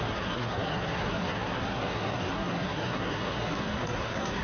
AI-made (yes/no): yes